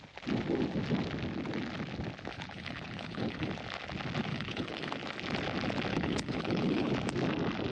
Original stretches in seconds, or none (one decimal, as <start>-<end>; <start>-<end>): 0.0-2.3; 3.5-4.3; 4.9-5.9; 6.9-7.7